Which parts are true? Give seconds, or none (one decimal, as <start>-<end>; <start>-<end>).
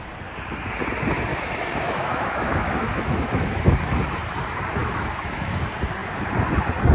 0.0-1.3; 3.8-4.8; 5.6-6.9